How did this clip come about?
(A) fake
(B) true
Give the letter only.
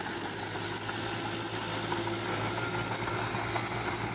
B